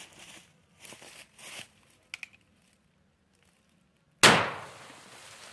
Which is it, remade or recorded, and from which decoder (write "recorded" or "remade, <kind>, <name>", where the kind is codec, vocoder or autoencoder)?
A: recorded